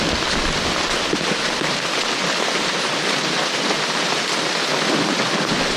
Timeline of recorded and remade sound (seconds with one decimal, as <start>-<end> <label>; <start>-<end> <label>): 0.0-2.2 recorded; 2.2-5.8 remade